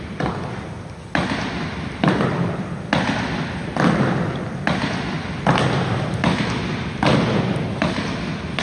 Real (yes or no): yes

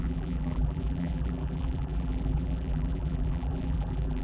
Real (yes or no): no